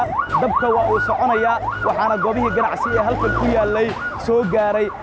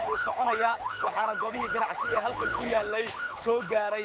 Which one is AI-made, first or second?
second